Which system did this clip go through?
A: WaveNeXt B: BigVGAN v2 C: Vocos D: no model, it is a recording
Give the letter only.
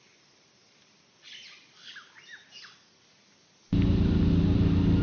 D